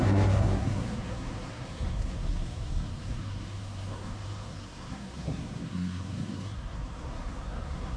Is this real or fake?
fake